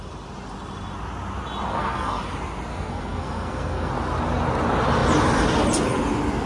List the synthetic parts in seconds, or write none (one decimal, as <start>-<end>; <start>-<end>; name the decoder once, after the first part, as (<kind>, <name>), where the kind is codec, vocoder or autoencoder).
1.7-2.2 (codec, SNAC); 2.7-3.9